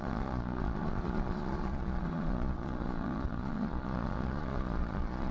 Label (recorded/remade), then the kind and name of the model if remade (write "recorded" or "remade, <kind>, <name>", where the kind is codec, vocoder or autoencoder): remade, vocoder, Vocos